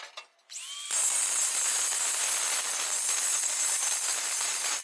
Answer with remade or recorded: recorded